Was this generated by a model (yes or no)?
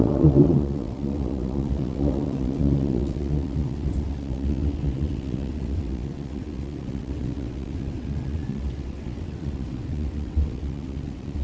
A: yes